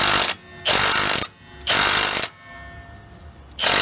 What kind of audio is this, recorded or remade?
recorded